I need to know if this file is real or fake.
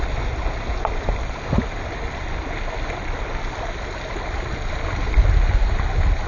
real